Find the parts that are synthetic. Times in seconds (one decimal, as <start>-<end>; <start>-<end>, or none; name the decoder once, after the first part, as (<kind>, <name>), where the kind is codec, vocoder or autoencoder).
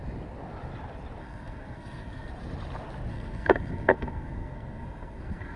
1.2-2.3 (codec, SNAC); 3.1-5.6